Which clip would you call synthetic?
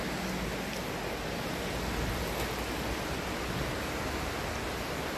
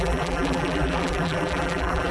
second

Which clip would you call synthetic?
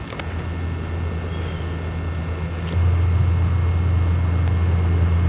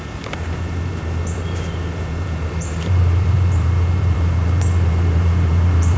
second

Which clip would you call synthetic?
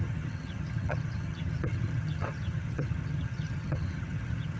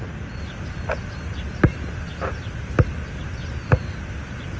first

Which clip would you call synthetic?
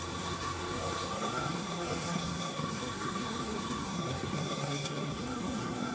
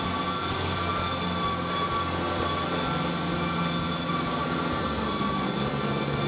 first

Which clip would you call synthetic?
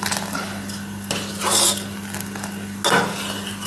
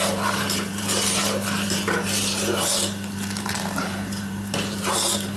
second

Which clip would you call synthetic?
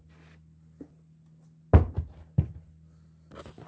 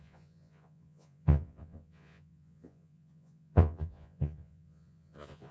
second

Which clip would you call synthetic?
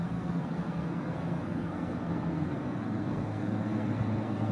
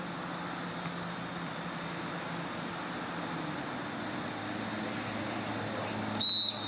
first